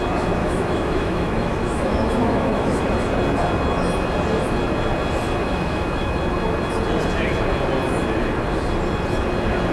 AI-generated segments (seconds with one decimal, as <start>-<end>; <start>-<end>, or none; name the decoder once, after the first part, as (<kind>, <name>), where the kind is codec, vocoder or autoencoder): 0.4-2.8 (autoencoder, DAC-VAE); 5.4-6.2